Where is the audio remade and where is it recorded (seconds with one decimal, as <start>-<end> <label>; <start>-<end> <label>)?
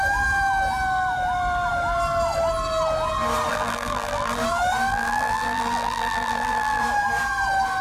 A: 0.0-3.5 recorded; 3.5-4.4 remade; 4.4-4.9 recorded; 4.9-6.8 remade; 6.8-7.8 recorded